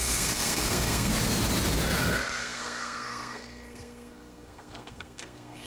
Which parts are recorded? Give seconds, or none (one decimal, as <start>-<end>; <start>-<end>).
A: 1.1-2.0